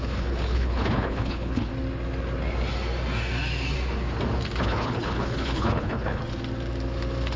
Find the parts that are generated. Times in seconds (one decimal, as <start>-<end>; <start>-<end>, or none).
0.0-1.7; 4.6-6.2